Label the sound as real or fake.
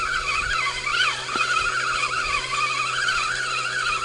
real